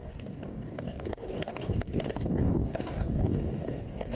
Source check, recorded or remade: remade